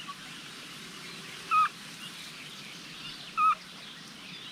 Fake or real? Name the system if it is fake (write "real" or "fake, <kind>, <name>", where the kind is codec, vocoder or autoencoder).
real